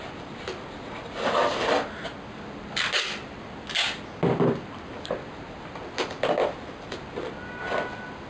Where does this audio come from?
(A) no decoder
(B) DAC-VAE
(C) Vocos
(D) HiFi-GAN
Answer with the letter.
A